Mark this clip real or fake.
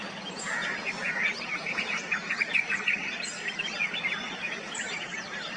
real